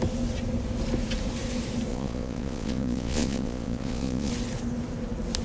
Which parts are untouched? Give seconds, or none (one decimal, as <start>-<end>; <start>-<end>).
0.0-1.9; 4.3-5.4